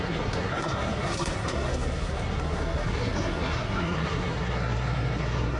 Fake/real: fake